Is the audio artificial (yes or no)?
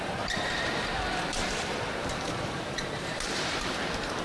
yes